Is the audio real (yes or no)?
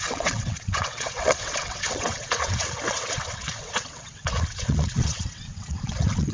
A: no